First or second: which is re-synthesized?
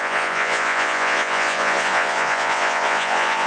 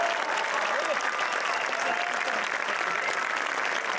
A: first